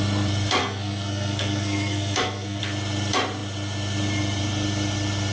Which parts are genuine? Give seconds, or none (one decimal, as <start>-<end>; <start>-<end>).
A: 0.0-0.6; 2.6-5.3

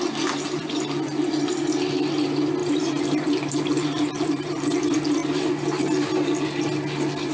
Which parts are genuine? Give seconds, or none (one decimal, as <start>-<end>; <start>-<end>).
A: 0.0-2.6; 4.8-5.2; 5.8-7.3